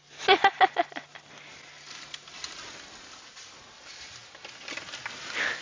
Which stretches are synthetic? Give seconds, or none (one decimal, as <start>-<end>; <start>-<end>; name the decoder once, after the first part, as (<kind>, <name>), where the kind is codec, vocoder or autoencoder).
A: none